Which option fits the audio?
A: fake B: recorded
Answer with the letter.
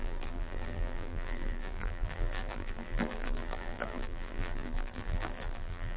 A